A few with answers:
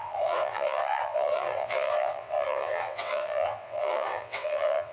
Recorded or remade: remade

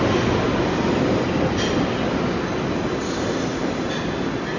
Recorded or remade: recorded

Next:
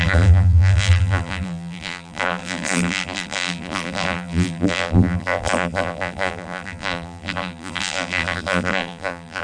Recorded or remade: remade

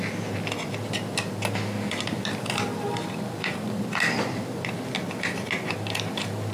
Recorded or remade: recorded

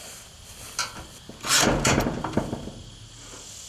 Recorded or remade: recorded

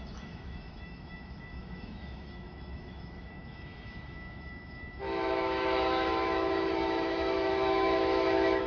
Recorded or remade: remade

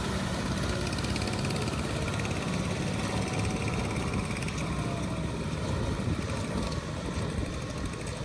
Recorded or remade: remade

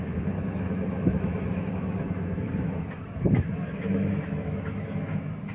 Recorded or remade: remade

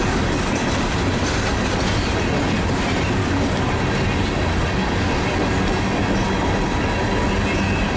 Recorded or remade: recorded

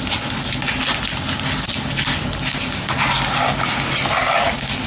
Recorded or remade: recorded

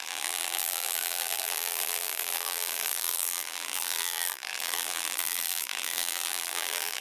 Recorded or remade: remade